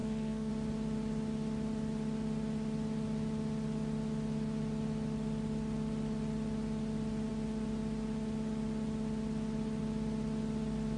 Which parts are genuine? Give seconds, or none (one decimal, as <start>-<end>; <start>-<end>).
0.5-11.0